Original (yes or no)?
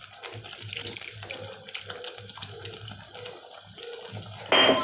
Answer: yes